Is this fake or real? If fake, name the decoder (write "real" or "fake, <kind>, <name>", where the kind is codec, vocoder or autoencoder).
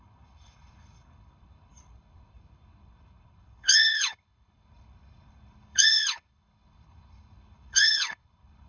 fake, codec, HILCodec